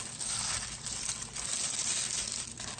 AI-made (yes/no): no